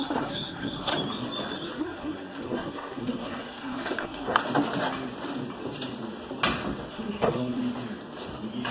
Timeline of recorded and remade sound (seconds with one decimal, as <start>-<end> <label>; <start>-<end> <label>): 0.0-0.9 remade; 0.9-1.8 recorded; 1.8-4.4 remade; 4.4-6.9 recorded; 6.9-7.6 remade; 7.6-8.7 recorded

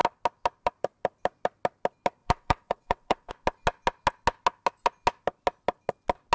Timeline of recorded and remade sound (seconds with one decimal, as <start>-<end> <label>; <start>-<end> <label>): 0.0-2.2 recorded; 2.2-3.3 remade; 3.3-6.3 recorded

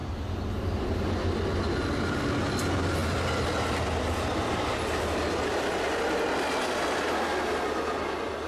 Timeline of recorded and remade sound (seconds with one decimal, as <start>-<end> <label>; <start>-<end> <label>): 0.0-8.5 recorded

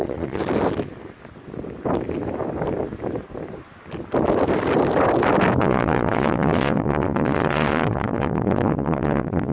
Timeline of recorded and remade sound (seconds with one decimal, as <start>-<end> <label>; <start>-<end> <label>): 0.0-0.4 remade; 0.4-5.6 recorded; 5.6-9.5 remade

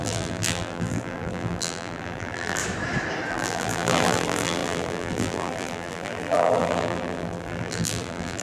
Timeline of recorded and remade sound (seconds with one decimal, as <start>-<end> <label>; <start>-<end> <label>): 0.0-2.6 remade; 2.6-3.3 recorded; 3.3-8.4 remade